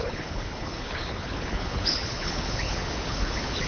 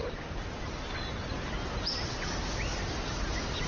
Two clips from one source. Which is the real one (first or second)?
second